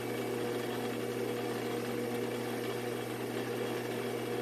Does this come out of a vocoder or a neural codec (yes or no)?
no